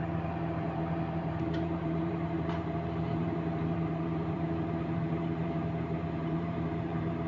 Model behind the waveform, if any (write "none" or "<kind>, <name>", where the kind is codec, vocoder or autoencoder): vocoder, BigVGAN v2